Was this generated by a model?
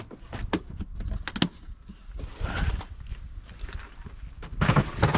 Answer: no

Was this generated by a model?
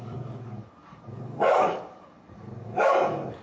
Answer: yes